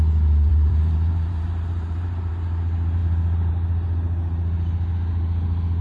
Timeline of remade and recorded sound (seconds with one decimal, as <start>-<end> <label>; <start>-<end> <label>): 0.0-0.5 recorded; 0.5-2.3 remade; 2.3-5.8 recorded